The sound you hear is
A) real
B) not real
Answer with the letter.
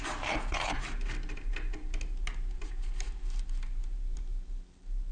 A